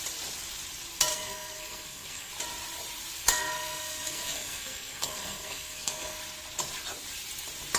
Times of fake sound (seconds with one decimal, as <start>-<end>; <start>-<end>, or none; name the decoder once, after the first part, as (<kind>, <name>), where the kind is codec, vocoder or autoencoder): 1.1-2.3 (codec, SNAC); 3.2-6.2

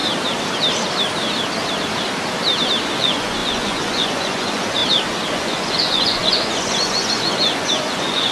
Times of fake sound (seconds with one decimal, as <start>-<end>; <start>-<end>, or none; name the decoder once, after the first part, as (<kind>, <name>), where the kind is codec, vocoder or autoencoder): 3.0-4.8 (vocoder, Vocos); 5.3-8.3

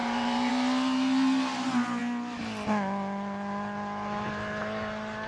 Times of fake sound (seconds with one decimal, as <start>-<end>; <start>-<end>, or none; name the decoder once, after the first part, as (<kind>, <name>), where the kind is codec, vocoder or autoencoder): 0.0-0.5 (vocoder, BigVGAN v2)

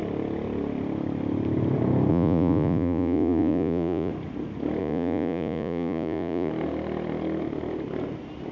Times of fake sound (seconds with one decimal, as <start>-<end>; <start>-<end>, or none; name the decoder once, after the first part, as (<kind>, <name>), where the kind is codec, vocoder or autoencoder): 2.1-4.1 (vocoder, Vocos); 4.8-6.5

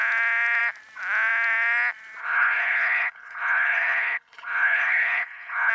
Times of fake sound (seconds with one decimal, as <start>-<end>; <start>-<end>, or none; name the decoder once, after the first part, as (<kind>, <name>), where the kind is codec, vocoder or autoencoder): 2.2-5.7 (codec, HILCodec)